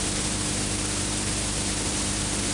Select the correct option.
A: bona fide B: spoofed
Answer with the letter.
B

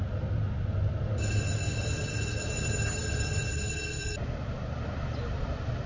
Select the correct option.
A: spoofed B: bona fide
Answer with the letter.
B